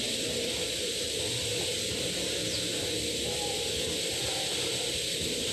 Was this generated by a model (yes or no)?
no